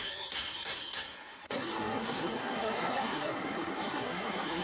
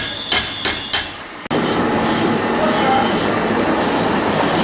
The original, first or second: second